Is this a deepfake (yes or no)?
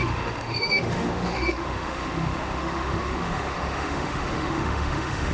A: yes